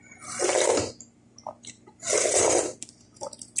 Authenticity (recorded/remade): recorded